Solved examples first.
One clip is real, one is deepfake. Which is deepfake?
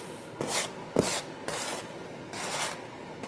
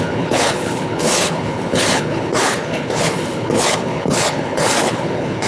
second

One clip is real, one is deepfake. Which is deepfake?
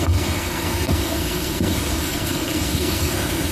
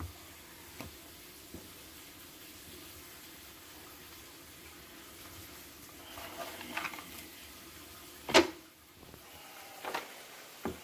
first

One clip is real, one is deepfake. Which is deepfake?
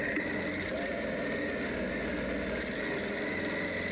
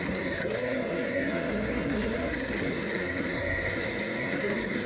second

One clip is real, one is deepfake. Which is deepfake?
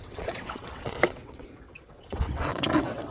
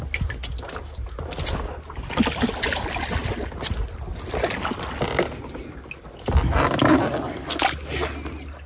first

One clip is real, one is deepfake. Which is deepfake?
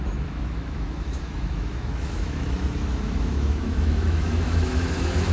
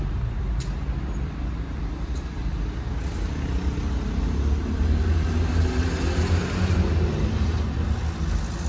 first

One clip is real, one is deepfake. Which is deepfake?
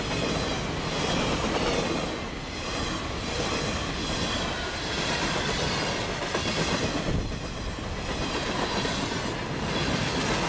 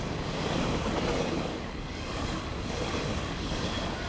second